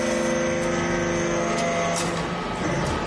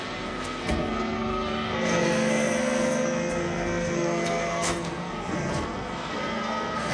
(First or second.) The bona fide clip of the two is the first